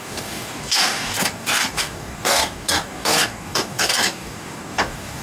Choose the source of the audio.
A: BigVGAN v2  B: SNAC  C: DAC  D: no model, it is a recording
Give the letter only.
C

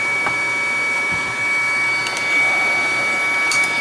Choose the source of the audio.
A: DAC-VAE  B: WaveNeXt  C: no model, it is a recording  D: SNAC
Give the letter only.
C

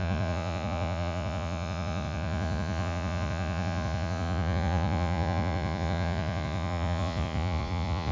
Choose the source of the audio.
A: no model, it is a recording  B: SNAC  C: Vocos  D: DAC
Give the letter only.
C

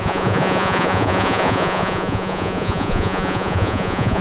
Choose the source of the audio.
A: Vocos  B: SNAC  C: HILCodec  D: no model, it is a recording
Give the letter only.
A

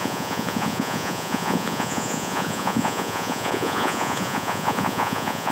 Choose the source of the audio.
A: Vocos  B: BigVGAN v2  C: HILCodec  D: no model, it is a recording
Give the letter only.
A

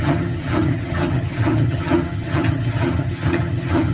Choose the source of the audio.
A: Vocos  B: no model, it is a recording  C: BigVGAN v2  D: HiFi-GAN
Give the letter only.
D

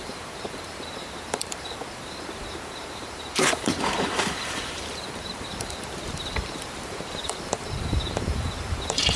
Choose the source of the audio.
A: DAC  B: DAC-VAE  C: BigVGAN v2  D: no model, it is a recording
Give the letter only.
C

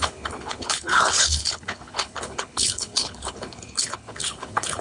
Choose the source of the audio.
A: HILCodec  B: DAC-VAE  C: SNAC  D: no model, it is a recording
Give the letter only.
A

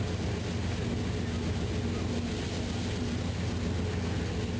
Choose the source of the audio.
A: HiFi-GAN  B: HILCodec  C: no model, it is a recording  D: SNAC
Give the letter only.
C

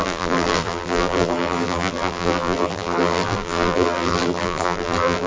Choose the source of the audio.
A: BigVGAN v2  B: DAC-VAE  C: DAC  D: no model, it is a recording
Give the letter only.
A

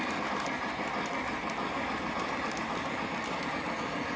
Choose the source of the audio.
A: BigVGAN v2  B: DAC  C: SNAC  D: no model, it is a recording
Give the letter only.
D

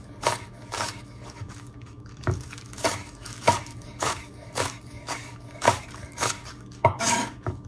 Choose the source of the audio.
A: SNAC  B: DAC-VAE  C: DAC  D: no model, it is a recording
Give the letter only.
C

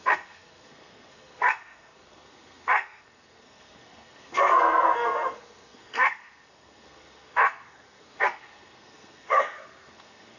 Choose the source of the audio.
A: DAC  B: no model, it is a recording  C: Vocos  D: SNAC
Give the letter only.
D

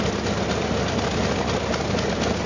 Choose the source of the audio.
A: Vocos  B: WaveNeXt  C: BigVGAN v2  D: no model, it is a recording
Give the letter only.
D